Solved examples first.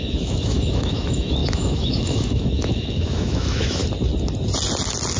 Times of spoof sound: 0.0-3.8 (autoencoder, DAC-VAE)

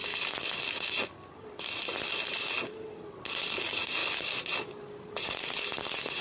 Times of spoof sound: none